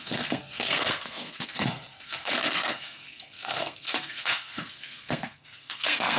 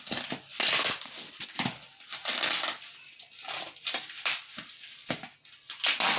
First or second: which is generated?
first